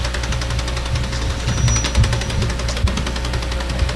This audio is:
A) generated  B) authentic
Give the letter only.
B